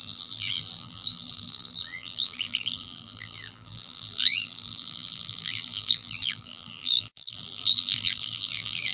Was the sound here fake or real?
fake